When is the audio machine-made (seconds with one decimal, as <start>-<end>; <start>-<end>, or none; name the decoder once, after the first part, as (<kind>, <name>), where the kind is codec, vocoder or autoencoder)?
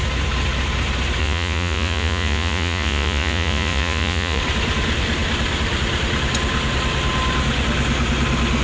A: 1.2-4.4 (vocoder, Vocos)